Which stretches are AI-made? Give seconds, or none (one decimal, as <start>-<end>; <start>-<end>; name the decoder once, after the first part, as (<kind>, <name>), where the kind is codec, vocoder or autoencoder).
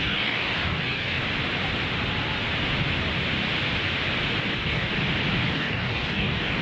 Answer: 0.0-1.2 (codec, DAC); 4.5-4.9; 5.5-6.6